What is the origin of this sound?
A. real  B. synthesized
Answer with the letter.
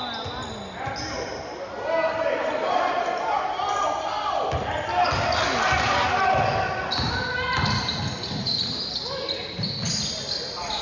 A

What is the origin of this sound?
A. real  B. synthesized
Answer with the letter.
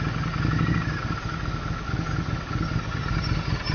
A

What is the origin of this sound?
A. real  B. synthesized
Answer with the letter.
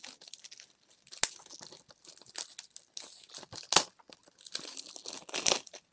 A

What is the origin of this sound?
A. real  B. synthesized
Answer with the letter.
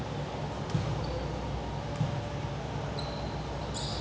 A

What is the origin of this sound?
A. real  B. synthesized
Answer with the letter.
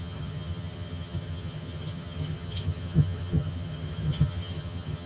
B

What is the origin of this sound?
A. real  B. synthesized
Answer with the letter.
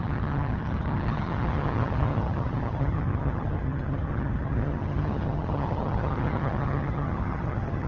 B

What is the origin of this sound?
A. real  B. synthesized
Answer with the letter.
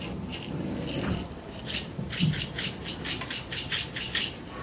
A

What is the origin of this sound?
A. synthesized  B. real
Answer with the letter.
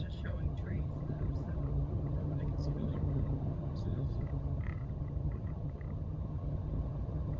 A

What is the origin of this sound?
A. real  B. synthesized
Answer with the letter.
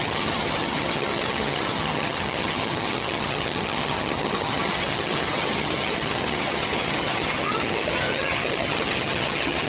B